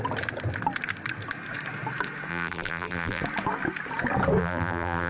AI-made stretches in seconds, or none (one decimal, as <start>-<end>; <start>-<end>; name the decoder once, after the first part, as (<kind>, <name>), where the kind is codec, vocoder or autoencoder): 2.3-3.2 (vocoder, BigVGAN v2); 4.4-5.1